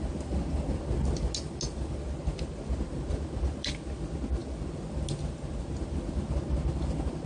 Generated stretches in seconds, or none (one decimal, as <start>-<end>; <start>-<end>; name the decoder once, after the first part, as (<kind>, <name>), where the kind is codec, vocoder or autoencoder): none

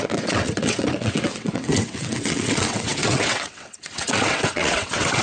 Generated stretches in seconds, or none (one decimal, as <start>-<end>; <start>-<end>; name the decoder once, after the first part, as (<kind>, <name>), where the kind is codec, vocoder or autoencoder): 0.0-5.2 (vocoder, WaveNeXt)

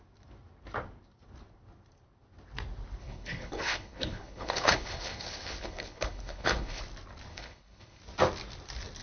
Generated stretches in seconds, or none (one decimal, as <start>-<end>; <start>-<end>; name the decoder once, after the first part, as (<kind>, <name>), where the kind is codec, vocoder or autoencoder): 3.0-6.8 (codec, HILCodec); 7.3-8.0